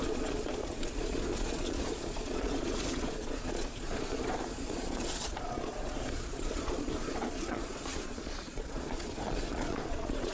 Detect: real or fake fake